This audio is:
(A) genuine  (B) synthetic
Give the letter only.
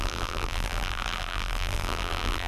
B